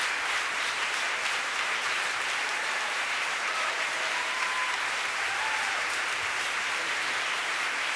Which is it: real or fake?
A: fake